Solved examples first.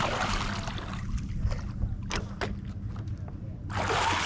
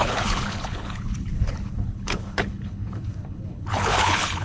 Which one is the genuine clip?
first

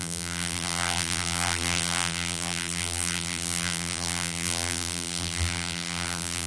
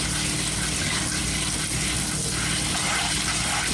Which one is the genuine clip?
second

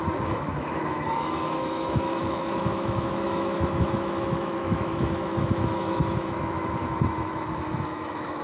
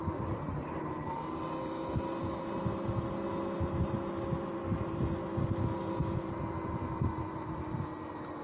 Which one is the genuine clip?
second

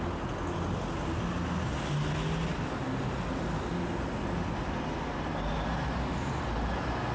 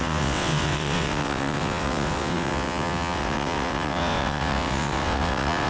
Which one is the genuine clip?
first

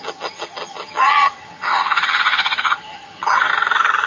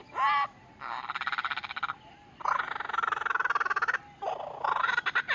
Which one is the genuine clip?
second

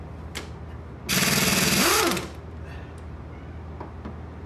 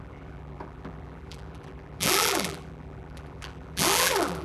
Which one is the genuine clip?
first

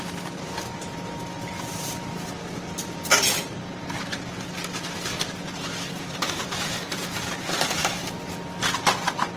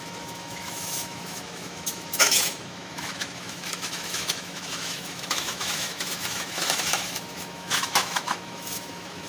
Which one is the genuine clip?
first